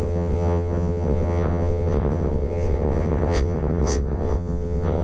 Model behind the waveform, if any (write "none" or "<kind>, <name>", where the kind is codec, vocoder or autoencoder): vocoder, WaveNeXt